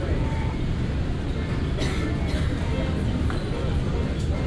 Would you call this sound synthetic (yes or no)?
no